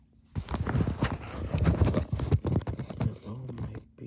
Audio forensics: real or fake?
real